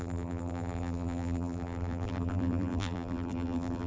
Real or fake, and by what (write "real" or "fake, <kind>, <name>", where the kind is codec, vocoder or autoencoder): fake, vocoder, BigVGAN v2